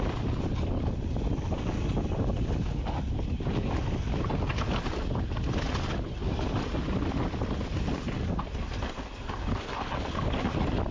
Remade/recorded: recorded